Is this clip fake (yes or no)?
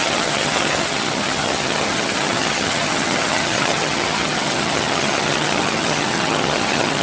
yes